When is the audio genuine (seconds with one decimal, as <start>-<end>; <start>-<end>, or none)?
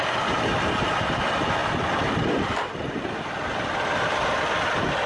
0.0-5.1